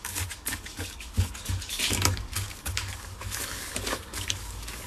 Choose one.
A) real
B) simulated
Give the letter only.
B